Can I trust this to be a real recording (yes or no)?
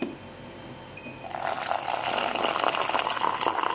yes